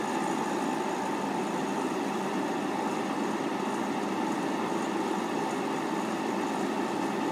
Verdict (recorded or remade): recorded